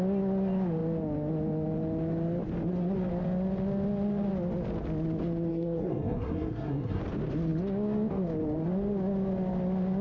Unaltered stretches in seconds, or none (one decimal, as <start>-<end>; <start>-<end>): 0.0-5.5; 7.0-10.0